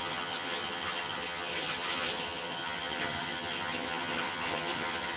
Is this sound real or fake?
fake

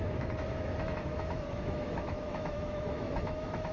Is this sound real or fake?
fake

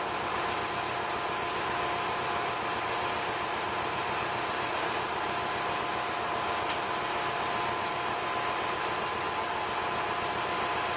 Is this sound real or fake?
real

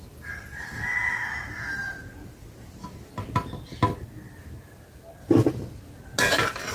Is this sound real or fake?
real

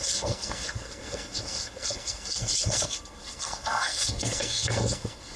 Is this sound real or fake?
fake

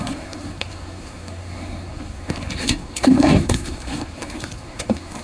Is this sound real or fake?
fake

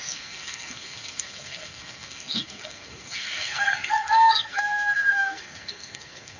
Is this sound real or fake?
fake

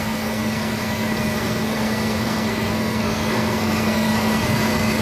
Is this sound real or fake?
fake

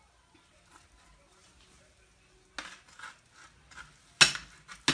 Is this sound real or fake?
real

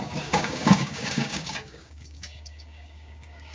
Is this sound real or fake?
fake